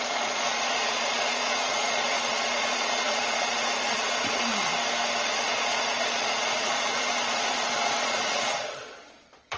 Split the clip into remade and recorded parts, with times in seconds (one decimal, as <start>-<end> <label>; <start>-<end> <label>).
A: 0.0-4.7 remade; 4.7-5.2 recorded; 5.2-9.6 remade